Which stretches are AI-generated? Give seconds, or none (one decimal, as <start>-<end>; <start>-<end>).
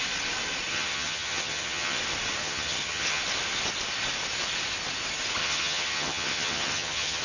0.7-2.0; 2.4-3.2; 5.4-7.2